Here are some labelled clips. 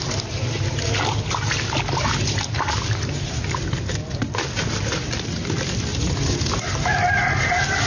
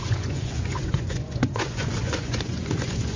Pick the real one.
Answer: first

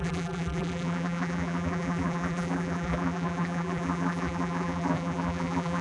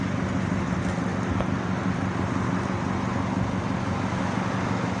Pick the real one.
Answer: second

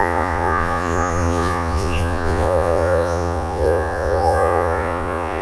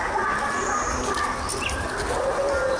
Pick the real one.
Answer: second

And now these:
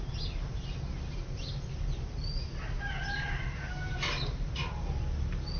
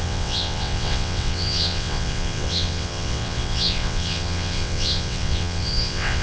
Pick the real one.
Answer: first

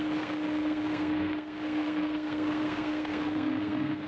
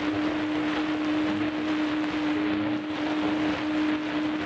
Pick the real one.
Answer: second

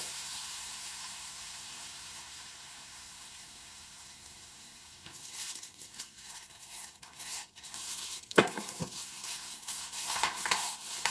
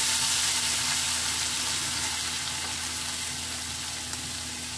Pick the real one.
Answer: second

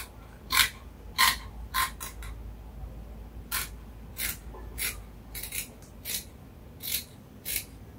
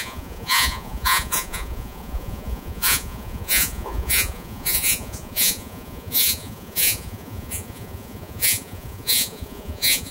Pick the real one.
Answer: first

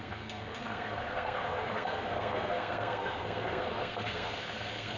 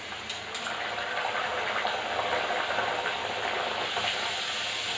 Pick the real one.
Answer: second